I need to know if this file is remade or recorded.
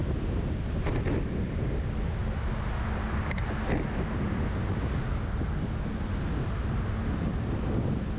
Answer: recorded